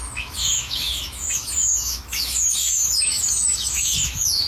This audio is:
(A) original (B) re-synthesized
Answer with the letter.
B